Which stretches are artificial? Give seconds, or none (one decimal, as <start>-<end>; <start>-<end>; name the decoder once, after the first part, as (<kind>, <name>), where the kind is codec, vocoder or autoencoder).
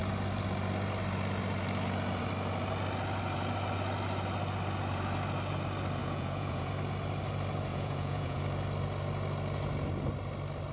6.0-6.7 (vocoder, Vocos); 7.7-8.4